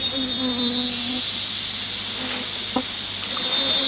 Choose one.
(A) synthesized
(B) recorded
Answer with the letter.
B